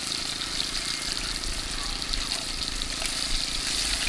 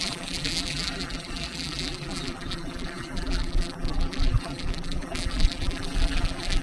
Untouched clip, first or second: first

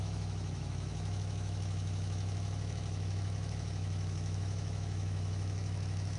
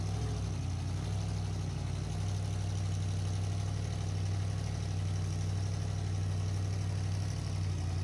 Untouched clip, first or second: second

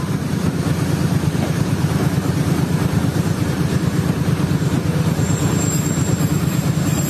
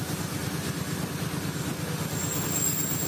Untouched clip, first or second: second